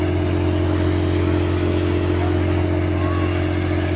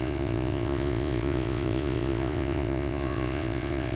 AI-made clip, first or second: second